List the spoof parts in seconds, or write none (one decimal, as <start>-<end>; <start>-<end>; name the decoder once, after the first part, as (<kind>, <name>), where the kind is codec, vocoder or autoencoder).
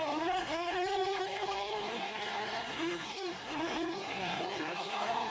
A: 0.0-5.3 (codec, SNAC)